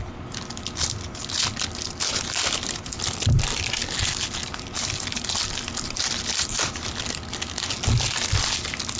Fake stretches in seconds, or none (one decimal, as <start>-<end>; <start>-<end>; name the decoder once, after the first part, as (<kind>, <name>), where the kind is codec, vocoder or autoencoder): 2.1-6.7 (vocoder, BigVGAN v2)